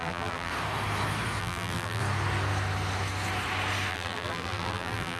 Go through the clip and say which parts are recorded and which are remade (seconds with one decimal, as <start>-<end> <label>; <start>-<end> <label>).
0.0-0.5 remade; 0.5-1.4 recorded; 1.4-2.0 remade; 2.0-3.9 recorded; 3.9-5.2 remade